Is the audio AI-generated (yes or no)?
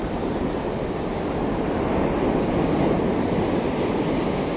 no